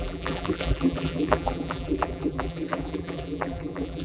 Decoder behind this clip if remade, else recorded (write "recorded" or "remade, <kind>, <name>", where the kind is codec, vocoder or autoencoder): remade, vocoder, BigVGAN v2